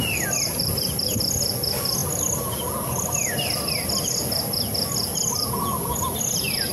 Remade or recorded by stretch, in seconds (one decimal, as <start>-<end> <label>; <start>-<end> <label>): 0.0-6.7 recorded